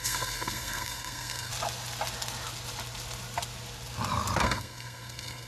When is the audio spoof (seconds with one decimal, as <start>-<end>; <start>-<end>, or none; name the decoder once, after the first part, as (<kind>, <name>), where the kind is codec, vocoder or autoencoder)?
0.0-1.5 (codec, SNAC); 4.4-5.5